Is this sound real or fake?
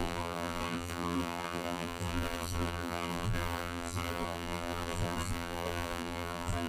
fake